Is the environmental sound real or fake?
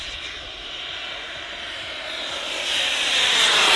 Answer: real